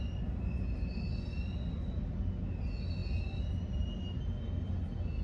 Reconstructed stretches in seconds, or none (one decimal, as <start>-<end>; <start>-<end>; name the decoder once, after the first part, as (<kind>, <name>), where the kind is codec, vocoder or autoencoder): none